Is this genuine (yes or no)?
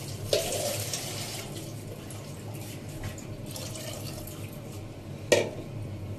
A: yes